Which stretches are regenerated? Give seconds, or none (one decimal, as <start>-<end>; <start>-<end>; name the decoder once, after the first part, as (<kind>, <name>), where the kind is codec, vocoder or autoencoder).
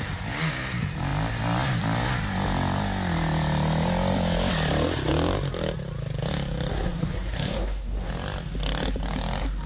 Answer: 6.7-8.1 (codec, SNAC)